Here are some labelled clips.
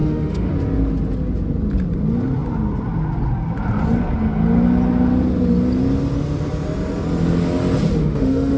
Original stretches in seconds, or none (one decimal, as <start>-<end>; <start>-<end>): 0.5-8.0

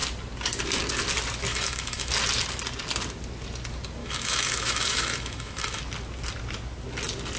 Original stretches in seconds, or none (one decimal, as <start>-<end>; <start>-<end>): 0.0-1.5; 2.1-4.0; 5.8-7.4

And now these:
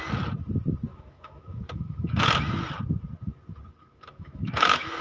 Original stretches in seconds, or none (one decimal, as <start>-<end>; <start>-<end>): 0.0-0.9; 2.3-3.8